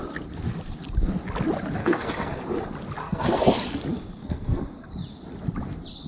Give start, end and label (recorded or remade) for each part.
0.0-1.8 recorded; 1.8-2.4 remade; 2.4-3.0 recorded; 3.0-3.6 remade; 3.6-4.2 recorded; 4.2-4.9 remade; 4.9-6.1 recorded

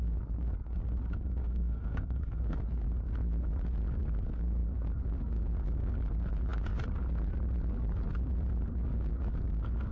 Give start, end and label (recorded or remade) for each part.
0.0-1.4 recorded; 1.4-2.4 remade; 2.4-9.9 recorded

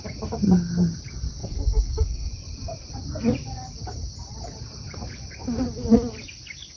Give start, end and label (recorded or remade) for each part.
0.0-1.4 recorded; 1.4-2.3 remade; 2.3-6.8 recorded

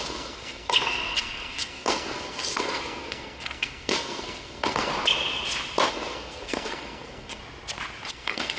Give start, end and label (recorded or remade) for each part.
0.0-4.9 remade; 4.9-5.9 recorded; 5.9-7.4 remade; 7.4-8.1 recorded; 8.1-8.6 remade